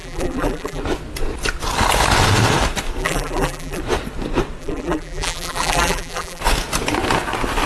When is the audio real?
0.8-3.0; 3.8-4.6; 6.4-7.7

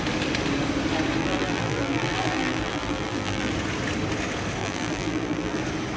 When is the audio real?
0.0-1.2; 3.5-4.6; 5.6-6.0